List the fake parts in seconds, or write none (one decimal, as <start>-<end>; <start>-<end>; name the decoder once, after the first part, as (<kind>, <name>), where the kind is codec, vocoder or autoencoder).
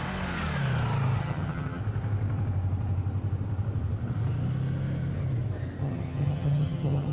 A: 1.2-1.8 (vocoder, HiFi-GAN); 5.8-7.1